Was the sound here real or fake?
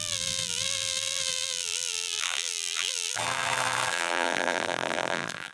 fake